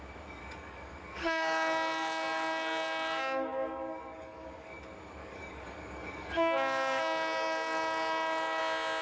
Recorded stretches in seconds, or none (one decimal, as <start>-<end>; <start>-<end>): 0.0-0.4; 4.8-5.2; 8.6-9.0